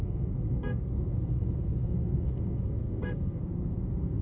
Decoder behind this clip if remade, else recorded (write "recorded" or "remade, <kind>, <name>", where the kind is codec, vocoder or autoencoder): remade, codec, SNAC